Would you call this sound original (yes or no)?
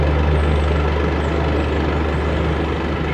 yes